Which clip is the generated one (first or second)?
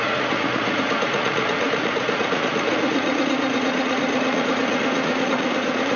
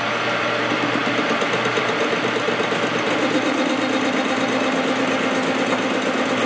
first